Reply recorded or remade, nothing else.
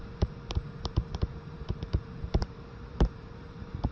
remade